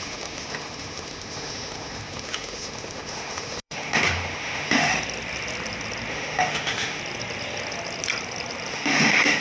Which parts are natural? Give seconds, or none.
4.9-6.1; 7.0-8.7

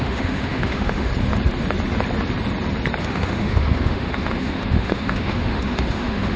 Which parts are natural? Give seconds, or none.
1.1-3.0